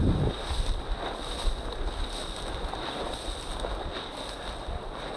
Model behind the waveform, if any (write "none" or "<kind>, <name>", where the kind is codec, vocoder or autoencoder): none